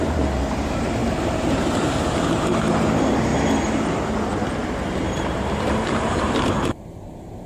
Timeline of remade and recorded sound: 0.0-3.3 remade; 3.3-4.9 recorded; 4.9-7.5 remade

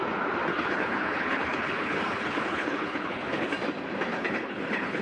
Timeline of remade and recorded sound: 0.0-0.5 recorded; 0.5-3.5 remade; 3.5-4.1 recorded; 4.1-5.0 remade

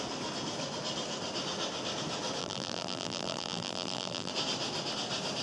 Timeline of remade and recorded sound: 0.0-2.4 recorded; 2.4-4.3 remade; 4.3-5.4 recorded

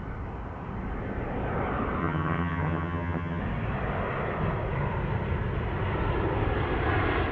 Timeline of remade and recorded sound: 0.0-2.0 recorded; 2.0-3.4 remade; 3.4-7.3 recorded

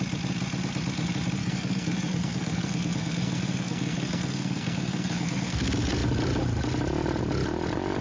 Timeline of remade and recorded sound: 0.0-1.4 recorded; 1.4-5.6 remade; 5.6-8.0 recorded